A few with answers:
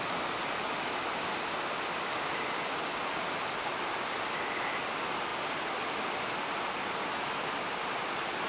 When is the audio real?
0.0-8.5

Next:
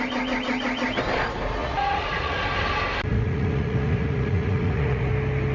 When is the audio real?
0.0-1.6; 2.4-3.1; 5.1-5.5

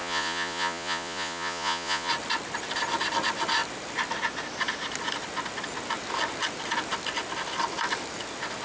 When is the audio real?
2.1-8.6

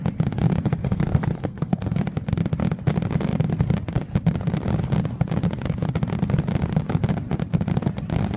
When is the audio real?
0.0-0.8; 2.0-8.4

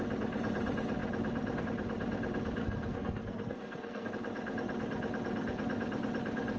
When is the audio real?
0.0-2.6; 4.1-6.6